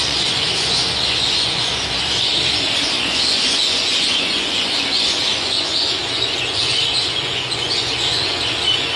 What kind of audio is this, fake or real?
fake